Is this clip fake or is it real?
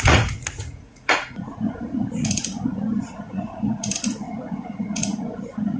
fake